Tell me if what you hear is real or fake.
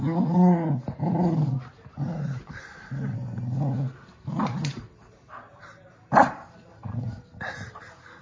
fake